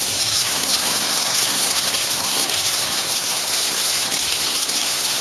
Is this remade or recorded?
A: remade